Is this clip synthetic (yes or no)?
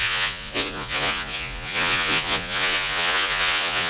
yes